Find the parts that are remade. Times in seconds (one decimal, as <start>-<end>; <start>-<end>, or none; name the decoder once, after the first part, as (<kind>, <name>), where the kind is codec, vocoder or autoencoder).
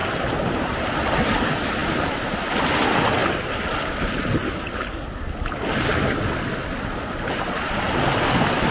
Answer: none